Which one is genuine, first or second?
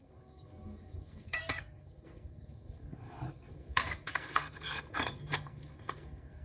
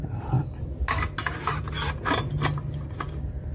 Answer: second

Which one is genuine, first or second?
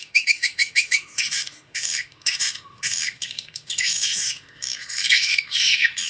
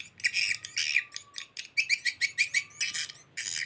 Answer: second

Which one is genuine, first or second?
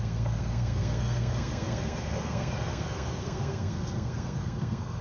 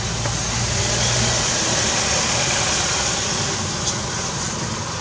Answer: second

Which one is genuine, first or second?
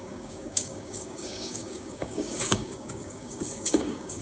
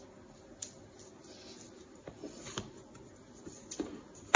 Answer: second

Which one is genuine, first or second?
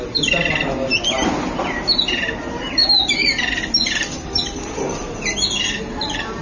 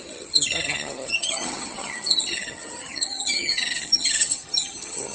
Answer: first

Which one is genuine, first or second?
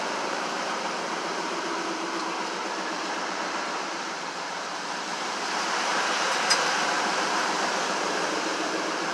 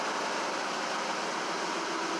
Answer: second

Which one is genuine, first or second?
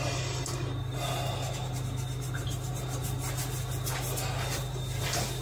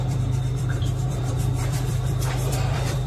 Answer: first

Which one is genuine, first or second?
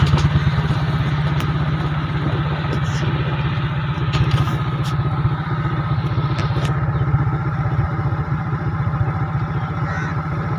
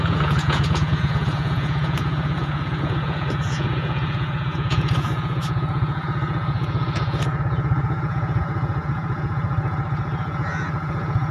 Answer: first